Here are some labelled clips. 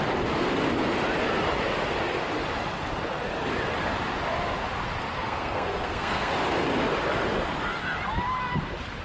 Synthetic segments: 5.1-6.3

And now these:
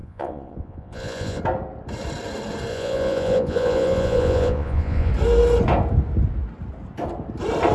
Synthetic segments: 0.0-1.4; 2.7-5.1

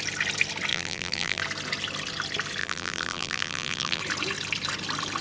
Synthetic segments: 0.7-1.4; 2.6-4.0

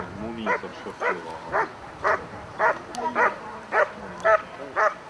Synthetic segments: 0.7-3.8

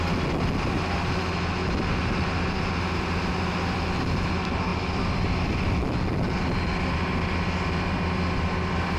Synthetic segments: 1.6-2.7; 4.7-5.9